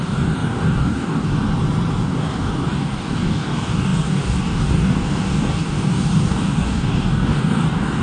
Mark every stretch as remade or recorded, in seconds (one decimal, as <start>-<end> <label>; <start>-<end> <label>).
0.0-1.3 remade; 1.3-2.0 recorded; 2.0-8.0 remade